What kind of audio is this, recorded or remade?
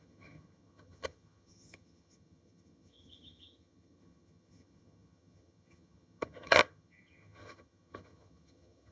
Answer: remade